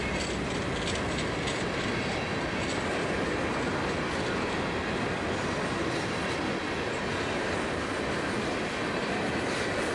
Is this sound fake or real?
real